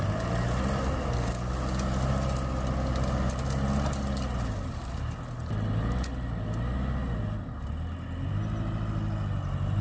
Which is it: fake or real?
real